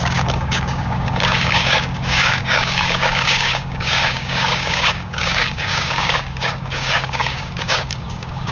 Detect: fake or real fake